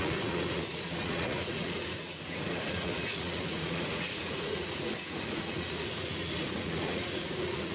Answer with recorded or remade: remade